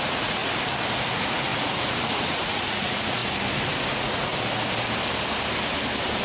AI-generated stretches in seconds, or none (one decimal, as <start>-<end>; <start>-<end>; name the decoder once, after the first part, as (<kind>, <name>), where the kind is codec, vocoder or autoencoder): 0.0-0.4 (vocoder, Vocos); 1.1-3.2; 3.9-4.3